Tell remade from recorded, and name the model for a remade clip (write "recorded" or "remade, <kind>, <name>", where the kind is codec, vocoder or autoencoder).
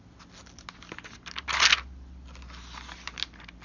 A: recorded